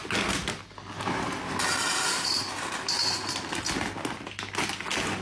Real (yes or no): yes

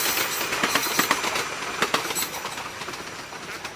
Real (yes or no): yes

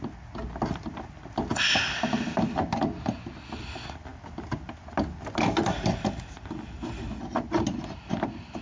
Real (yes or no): yes